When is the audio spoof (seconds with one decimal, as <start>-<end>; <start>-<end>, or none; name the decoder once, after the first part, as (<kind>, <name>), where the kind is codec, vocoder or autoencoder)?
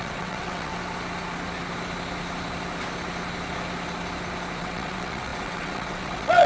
0.0-0.7 (vocoder, WaveNeXt); 4.6-6.5